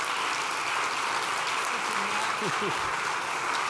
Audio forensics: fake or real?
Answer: real